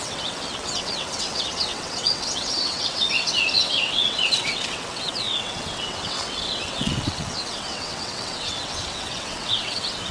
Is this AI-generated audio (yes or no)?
yes